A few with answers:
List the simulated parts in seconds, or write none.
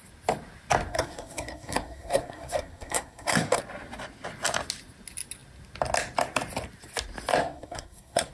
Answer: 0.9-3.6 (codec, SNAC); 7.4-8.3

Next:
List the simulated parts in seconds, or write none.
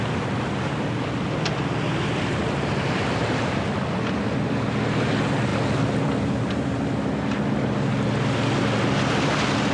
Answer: none